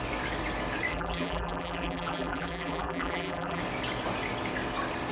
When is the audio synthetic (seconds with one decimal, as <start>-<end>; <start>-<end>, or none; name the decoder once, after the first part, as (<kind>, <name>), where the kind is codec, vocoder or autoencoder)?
0.9-3.6 (vocoder, BigVGAN v2)